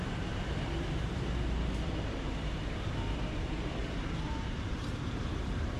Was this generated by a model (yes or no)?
yes